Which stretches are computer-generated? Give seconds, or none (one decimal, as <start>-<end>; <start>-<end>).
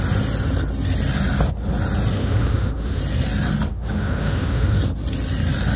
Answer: 2.2-3.0; 3.7-4.8